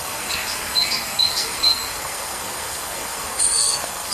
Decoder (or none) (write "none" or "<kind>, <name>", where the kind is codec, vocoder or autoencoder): codec, SNAC